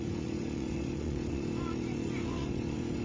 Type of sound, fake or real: fake